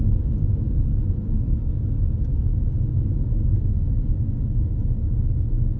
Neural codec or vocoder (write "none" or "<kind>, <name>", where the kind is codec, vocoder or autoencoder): none